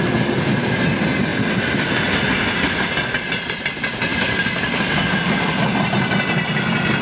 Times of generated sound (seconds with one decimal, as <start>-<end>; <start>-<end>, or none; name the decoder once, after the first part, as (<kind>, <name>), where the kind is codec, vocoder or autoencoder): 4.1-5.3 (vocoder, BigVGAN v2)